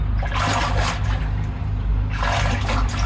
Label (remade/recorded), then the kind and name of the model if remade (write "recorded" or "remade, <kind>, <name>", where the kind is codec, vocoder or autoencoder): recorded